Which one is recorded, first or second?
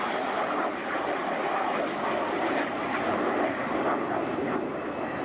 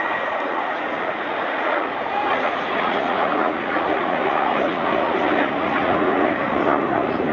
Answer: first